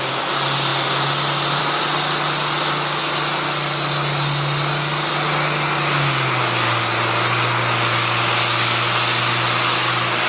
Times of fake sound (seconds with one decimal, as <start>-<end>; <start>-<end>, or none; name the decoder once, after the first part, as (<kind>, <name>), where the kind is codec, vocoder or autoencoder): none